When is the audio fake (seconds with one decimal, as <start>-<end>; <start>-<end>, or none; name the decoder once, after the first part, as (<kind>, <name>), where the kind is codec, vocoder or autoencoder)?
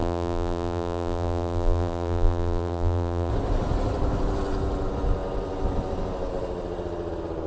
0.0-3.3 (vocoder, BigVGAN v2)